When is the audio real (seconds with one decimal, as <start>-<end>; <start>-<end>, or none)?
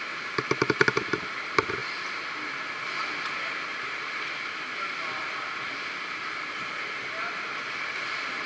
1.8-3.3; 3.7-8.5